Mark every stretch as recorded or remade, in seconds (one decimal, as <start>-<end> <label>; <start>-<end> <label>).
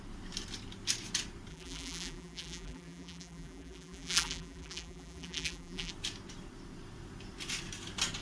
0.0-1.5 recorded; 1.5-5.9 remade; 5.9-8.2 recorded